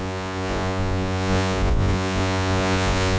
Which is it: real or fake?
fake